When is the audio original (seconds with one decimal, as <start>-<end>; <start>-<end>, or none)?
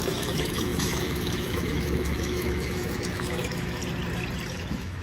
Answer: 3.8-4.5